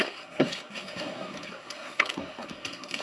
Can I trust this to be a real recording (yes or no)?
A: no